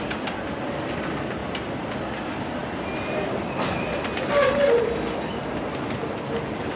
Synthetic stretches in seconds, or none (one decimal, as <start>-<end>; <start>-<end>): none